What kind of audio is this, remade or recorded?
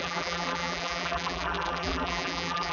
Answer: remade